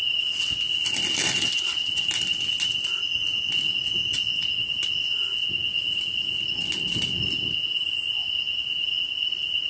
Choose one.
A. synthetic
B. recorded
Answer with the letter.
B